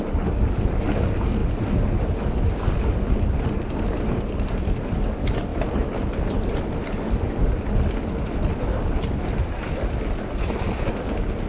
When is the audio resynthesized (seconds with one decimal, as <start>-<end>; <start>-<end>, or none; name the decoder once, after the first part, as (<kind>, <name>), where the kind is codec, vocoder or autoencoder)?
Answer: none